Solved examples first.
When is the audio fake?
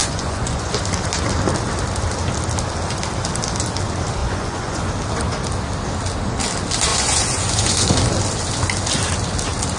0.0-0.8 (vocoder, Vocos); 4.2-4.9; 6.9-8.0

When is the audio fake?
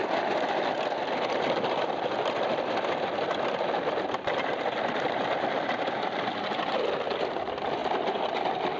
none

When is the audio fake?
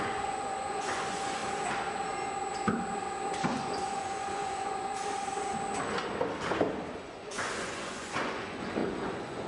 0.0-1.4 (vocoder, Vocos); 3.4-4.9; 6.9-9.5